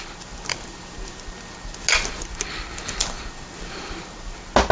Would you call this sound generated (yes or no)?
no